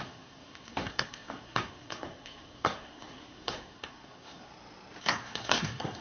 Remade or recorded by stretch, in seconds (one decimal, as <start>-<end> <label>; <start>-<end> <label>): 0.0-4.5 remade; 4.5-5.0 recorded; 5.0-6.0 remade